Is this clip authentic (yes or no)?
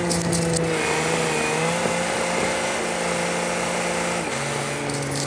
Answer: yes